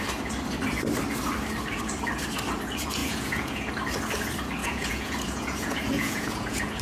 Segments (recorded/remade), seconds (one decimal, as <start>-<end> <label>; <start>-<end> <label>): 0.0-3.0 recorded; 3.0-3.7 remade; 3.7-4.6 recorded; 4.6-6.8 remade